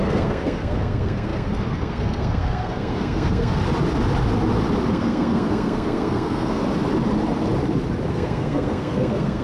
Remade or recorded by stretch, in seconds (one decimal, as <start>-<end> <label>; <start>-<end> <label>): 0.0-3.6 remade; 3.6-4.9 recorded; 4.9-6.6 remade; 6.6-8.1 recorded; 8.1-9.4 remade